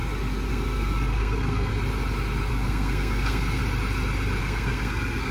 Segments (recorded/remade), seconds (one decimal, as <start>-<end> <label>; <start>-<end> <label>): 0.0-0.5 recorded; 0.5-1.7 remade; 1.7-2.5 recorded; 2.5-3.6 remade; 3.6-4.4 recorded; 4.4-5.3 remade